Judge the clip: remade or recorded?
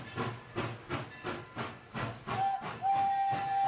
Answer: recorded